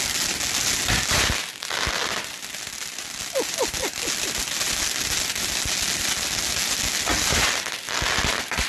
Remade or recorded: recorded